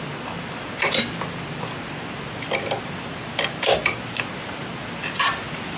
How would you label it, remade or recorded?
recorded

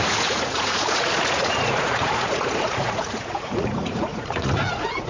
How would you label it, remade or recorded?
remade